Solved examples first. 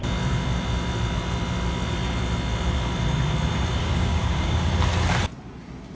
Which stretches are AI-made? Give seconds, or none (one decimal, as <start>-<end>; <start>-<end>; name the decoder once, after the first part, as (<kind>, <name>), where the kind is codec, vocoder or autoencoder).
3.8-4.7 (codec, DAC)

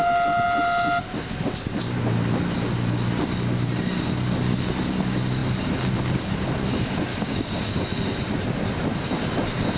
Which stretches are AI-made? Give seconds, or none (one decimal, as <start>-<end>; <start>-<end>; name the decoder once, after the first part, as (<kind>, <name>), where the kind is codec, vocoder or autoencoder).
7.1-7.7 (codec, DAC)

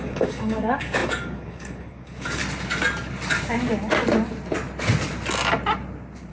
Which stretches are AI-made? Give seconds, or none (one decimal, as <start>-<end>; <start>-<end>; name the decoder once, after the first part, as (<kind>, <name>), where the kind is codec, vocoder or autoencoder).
0.0-2.4 (codec, DAC)

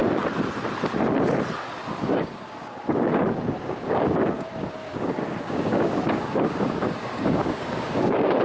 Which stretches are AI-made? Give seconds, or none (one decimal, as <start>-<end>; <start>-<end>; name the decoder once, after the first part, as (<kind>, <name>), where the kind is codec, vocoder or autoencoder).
2.1-8.4 (codec, DAC)

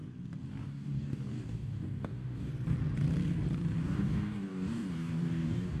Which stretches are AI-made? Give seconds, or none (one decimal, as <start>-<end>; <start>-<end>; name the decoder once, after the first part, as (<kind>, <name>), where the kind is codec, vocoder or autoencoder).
0.6-2.5 (codec, DAC); 3.8-5.8